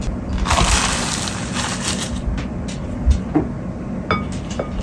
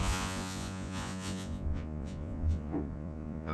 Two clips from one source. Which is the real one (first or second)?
first